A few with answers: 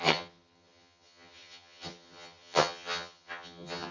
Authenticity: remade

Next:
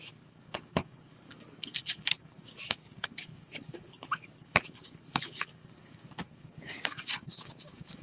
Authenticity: remade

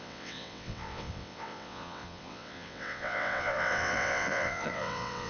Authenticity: remade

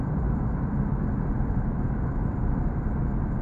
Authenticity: recorded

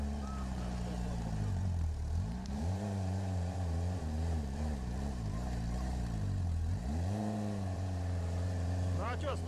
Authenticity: remade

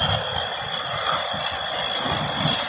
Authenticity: recorded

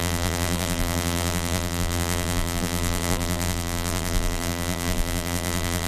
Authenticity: remade